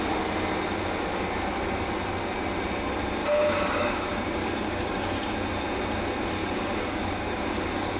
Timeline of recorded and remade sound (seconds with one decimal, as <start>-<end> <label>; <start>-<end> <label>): 0.0-3.2 recorded; 3.2-5.2 remade; 5.2-6.4 recorded; 6.4-8.0 remade